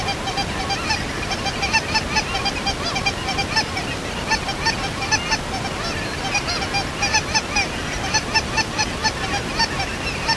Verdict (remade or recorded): recorded